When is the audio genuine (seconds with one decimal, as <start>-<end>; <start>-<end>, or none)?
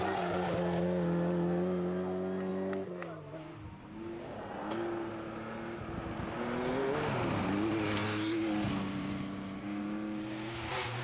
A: 0.0-11.0